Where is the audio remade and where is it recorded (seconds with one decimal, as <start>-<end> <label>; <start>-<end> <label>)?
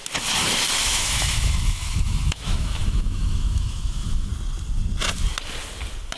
0.0-0.8 recorded; 0.8-4.3 remade; 4.3-6.2 recorded